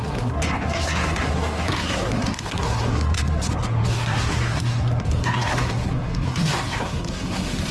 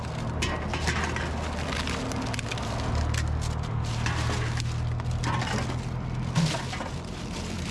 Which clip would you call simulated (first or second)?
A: first